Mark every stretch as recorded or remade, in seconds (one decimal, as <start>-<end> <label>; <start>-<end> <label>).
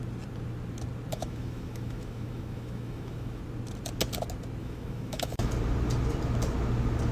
0.0-1.1 recorded; 1.1-3.4 remade; 3.4-4.6 recorded; 4.6-5.5 remade; 5.5-7.1 recorded